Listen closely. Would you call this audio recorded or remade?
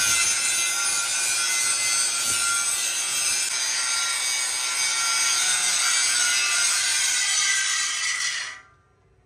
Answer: recorded